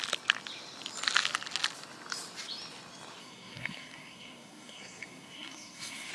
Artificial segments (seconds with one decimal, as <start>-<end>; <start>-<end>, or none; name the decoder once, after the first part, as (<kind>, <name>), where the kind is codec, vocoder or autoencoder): 3.2-6.1 (codec, SNAC)